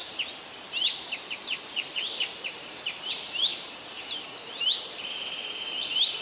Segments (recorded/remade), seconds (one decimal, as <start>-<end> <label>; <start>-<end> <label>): 0.0-6.2 remade